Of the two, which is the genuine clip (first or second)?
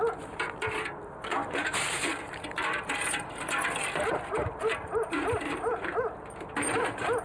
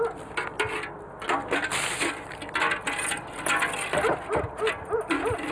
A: second